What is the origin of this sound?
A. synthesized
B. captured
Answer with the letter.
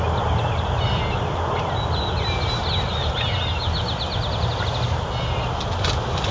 B